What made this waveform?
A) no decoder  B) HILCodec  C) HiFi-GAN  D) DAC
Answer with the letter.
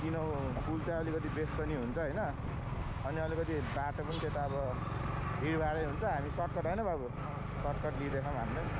A